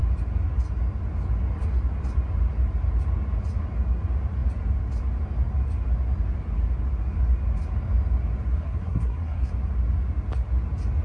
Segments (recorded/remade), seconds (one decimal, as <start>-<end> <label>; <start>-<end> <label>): 0.0-8.5 recorded; 8.5-9.5 remade; 9.5-11.0 recorded